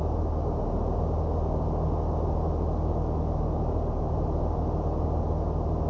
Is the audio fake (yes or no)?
no